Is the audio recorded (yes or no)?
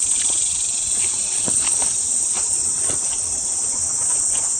no